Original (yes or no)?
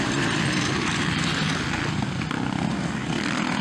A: yes